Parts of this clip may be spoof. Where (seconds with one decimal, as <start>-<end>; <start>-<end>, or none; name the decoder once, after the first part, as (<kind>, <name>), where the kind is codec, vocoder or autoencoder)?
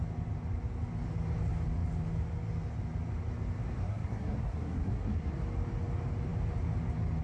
3.8-5.3 (codec, SNAC)